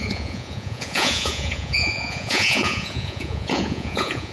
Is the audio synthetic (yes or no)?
yes